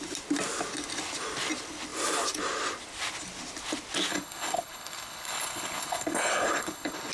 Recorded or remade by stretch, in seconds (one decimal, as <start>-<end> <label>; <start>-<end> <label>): 0.0-4.1 recorded; 4.1-7.1 remade